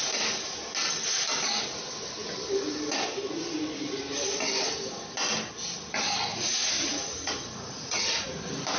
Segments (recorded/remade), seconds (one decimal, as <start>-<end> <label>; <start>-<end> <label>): 0.0-6.3 recorded; 6.3-8.4 remade; 8.4-8.8 recorded